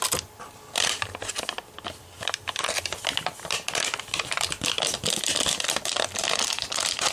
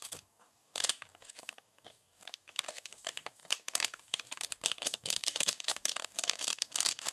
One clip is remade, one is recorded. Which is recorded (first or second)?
first